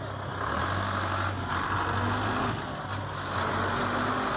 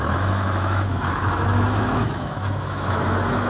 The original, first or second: first